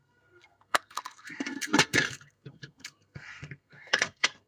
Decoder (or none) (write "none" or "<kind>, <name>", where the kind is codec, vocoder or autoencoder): codec, SNAC